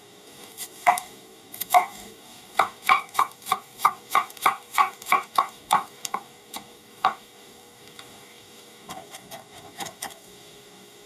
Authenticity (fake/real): fake